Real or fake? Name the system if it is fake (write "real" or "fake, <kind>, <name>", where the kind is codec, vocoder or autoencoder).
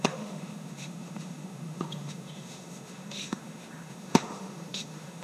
fake, autoencoder, DAC-VAE